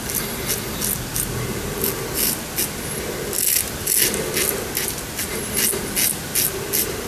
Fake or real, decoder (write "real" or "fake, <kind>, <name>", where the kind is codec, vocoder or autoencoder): real